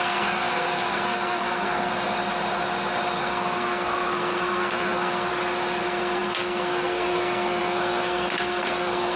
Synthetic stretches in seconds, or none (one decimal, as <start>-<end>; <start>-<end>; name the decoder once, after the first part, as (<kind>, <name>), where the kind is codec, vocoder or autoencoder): 0.0-1.9 (codec, SNAC); 3.2-5.3; 5.8-9.2